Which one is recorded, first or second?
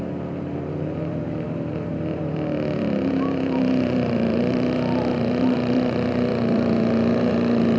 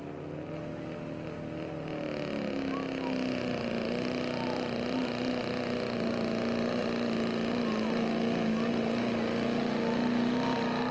second